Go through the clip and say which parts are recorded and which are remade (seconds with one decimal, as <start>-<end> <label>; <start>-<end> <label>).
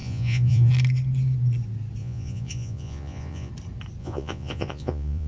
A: 0.0-0.7 remade; 0.7-2.0 recorded; 2.0-3.5 remade; 3.5-4.0 recorded; 4.0-5.3 remade